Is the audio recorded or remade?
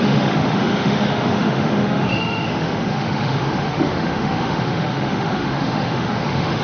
remade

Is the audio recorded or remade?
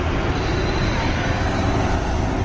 recorded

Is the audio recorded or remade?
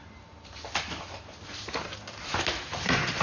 recorded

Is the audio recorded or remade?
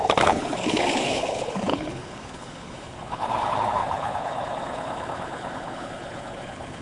remade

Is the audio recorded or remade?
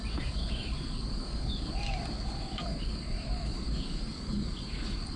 remade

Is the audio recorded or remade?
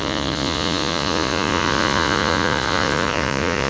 remade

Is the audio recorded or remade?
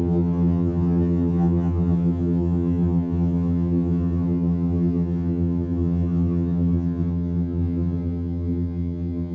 remade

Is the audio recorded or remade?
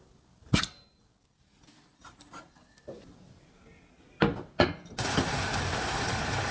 recorded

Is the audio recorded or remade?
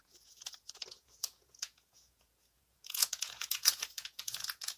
remade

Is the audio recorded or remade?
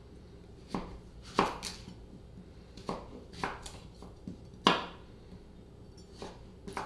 recorded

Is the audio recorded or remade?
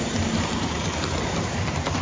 remade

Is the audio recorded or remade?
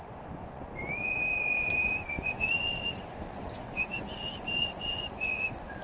remade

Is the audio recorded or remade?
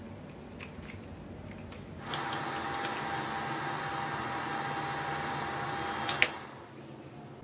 recorded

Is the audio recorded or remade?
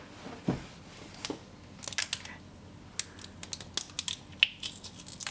recorded